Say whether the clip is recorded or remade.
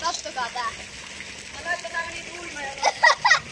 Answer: recorded